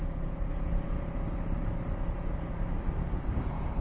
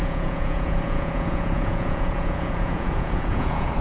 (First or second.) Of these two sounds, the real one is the first